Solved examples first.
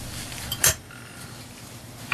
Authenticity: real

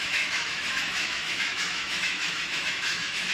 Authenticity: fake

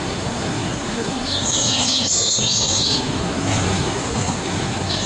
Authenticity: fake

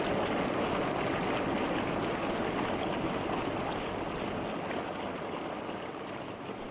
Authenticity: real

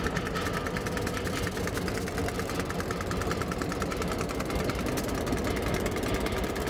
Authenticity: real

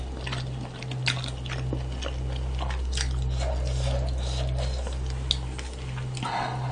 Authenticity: real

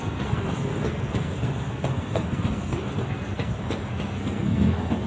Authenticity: fake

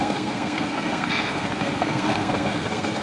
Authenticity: fake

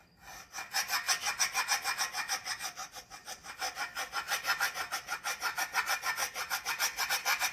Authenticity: real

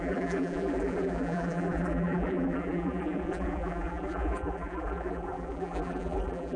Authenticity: fake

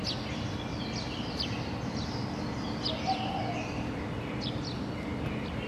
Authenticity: real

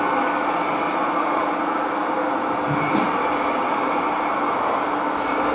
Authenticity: real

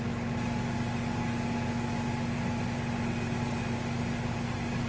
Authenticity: real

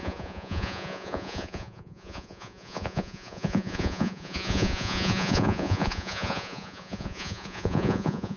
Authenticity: fake